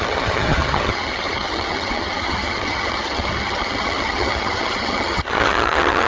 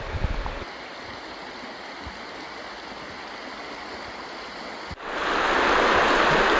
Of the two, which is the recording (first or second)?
second